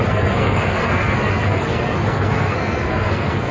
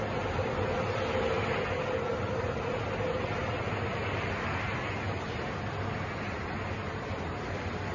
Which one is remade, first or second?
first